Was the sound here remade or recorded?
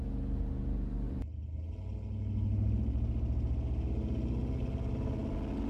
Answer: recorded